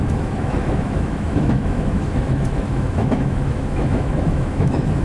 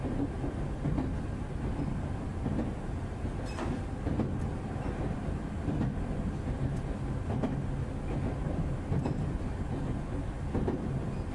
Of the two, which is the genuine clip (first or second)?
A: second